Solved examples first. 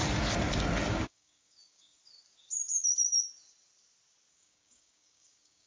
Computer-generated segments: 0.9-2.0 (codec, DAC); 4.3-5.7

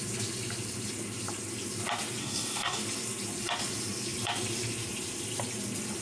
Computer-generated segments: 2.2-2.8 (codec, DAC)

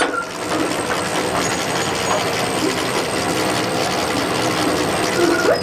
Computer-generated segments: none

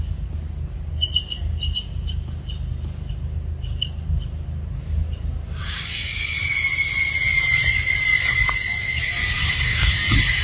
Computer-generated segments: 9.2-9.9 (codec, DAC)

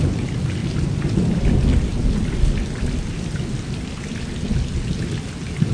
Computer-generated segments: none

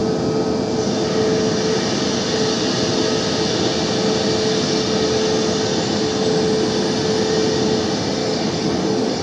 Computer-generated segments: 8.2-9.2 (codec, DAC)